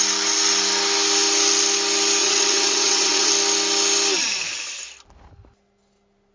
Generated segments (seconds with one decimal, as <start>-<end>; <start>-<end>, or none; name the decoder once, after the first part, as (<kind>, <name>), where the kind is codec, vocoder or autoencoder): 2.2-3.3 (vocoder, WaveNeXt)